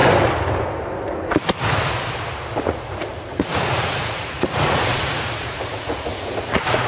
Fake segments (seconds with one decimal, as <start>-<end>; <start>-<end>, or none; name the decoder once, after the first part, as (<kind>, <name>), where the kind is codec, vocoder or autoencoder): 2.6-6.9 (vocoder, Vocos)